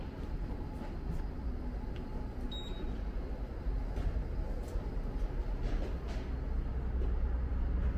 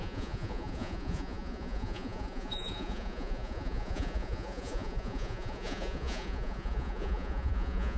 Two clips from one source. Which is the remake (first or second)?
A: second